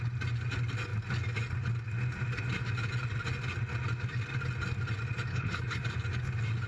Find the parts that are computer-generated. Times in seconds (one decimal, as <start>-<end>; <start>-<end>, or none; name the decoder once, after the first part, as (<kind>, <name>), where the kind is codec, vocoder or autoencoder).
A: 5.3-5.8 (codec, HILCodec)